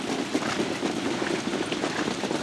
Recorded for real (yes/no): yes